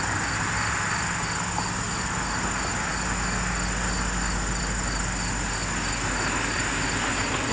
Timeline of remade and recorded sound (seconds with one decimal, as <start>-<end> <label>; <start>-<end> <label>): 0.0-7.5 recorded

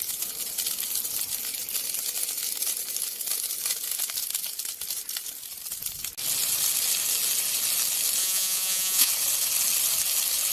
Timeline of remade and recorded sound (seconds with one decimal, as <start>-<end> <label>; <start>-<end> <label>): 0.0-8.2 recorded; 8.2-9.1 remade; 9.1-10.5 recorded

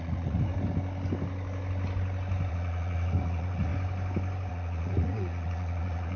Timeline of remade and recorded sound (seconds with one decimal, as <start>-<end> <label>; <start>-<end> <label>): 0.0-0.5 remade; 0.5-2.5 recorded; 2.5-3.7 remade; 3.7-4.5 recorded; 4.5-6.2 remade

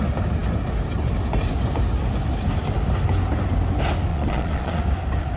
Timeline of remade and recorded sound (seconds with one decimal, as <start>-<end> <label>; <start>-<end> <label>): 0.0-4.1 recorded; 4.1-4.8 remade; 4.8-5.4 recorded